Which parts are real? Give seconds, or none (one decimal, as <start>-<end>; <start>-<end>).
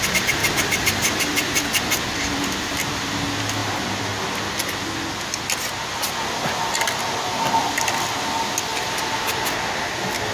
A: 0.0-0.4; 3.1-8.7; 9.3-10.3